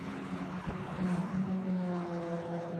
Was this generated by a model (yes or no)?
yes